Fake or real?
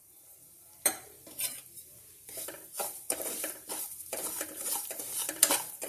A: fake